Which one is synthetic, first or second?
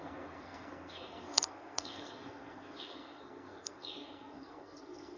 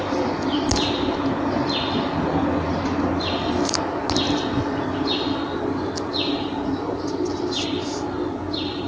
first